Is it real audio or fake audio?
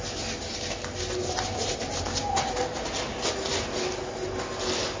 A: real